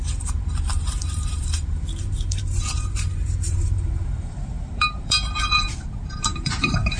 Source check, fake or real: fake